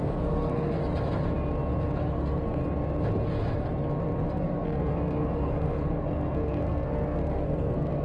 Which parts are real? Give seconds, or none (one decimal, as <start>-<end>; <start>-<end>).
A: 0.8-2.0; 2.6-4.3